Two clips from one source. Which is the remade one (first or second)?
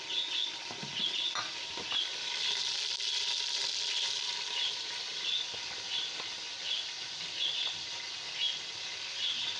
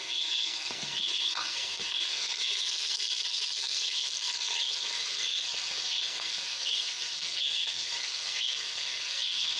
second